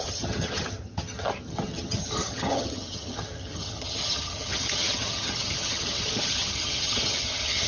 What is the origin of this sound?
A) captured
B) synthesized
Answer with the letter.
B